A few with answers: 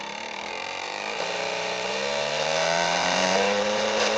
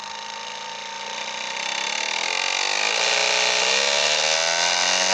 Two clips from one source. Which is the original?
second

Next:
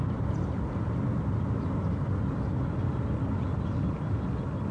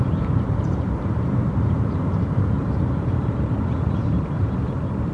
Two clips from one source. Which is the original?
first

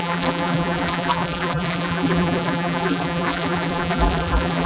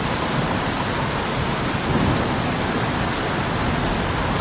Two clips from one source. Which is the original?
second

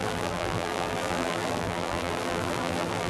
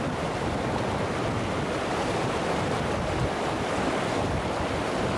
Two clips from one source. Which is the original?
second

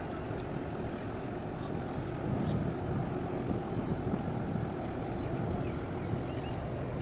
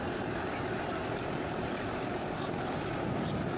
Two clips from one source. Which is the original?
first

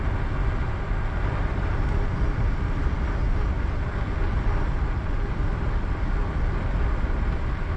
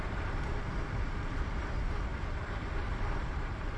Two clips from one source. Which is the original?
first